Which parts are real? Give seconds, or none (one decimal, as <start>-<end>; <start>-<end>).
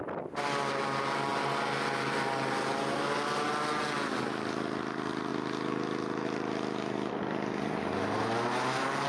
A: 0.0-9.1